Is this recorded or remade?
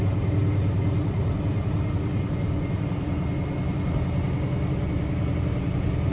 recorded